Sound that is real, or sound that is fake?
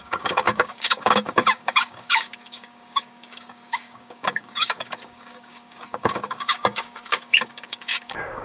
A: fake